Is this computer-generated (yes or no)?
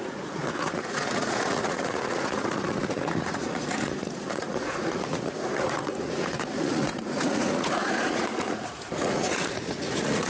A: yes